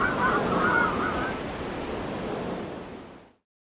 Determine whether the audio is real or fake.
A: real